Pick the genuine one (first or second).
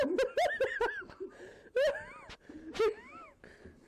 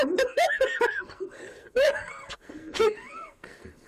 first